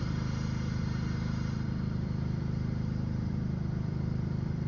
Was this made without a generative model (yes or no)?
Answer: no